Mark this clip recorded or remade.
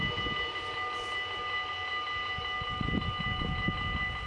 recorded